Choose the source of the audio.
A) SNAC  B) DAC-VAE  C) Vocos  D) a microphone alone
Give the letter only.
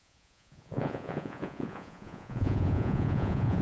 C